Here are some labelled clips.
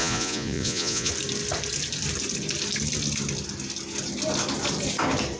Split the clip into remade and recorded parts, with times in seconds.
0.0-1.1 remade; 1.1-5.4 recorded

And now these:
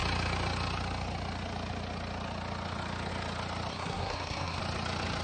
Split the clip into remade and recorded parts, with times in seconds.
0.0-3.7 recorded; 3.7-4.6 remade; 4.6-5.2 recorded